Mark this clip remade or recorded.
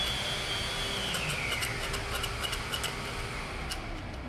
recorded